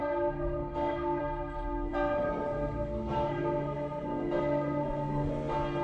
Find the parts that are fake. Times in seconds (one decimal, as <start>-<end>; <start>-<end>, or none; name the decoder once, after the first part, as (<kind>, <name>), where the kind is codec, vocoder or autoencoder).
0.0-1.2 (codec, SNAC); 1.9-5.3